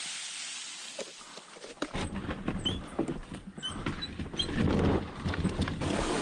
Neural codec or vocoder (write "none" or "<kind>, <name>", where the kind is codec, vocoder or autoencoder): none